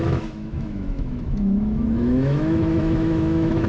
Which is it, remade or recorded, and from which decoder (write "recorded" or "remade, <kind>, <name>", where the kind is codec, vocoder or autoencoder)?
remade, autoencoder, DAC-VAE